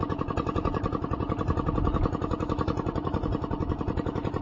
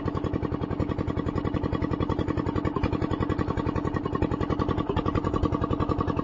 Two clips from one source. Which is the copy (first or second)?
first